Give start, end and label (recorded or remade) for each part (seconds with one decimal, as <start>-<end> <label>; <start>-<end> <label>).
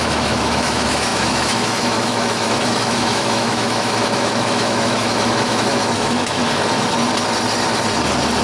0.0-6.4 remade; 6.4-8.4 recorded